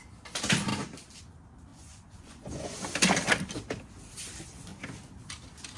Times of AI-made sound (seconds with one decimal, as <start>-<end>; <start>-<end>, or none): 1.7-2.8